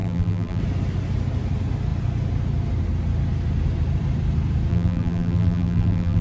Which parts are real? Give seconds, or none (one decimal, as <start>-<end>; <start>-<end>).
0.6-4.7

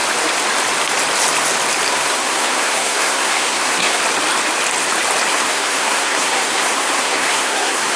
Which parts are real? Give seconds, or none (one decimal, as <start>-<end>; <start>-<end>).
0.0-1.9; 4.0-5.3

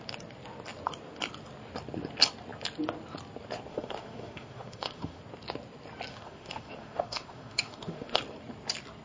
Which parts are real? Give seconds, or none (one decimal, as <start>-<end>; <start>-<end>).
0.0-3.7; 5.2-6.1; 8.2-9.0